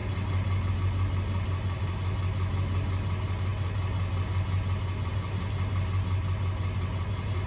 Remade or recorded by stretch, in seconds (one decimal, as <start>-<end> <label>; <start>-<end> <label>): 0.0-7.5 recorded